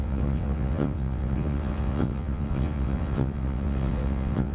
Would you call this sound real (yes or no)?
no